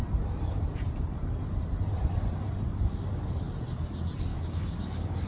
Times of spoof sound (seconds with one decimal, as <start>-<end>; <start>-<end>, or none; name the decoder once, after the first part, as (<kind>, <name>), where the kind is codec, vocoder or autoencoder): 4.3-5.3 (codec, DAC)